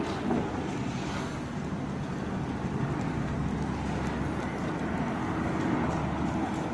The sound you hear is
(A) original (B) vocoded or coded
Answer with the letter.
A